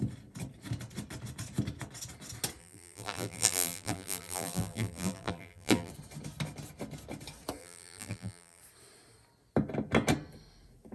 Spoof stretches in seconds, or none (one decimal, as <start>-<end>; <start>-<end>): 2.6-5.9; 7.6-8.6